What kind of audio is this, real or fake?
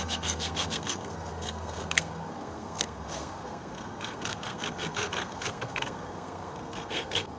fake